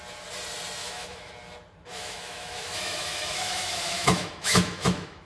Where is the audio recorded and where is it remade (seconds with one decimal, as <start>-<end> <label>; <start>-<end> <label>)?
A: 0.0-0.8 recorded; 0.8-1.3 remade; 1.3-1.9 recorded; 1.9-5.3 remade